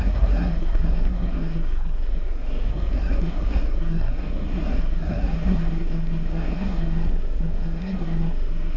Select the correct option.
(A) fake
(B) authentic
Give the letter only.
A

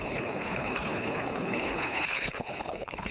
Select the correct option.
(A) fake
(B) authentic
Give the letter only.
A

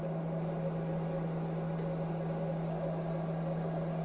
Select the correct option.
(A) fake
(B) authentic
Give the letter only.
B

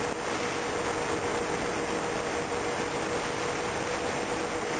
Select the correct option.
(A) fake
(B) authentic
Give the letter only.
B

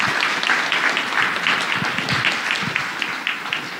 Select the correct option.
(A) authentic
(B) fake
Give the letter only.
A